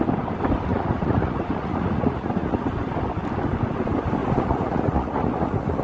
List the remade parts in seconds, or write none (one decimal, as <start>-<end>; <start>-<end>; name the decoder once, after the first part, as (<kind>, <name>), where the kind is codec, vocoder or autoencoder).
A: 0.7-2.7 (vocoder, Vocos); 4.2-5.8